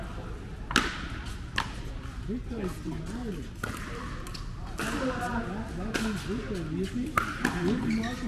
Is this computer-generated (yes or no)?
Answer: no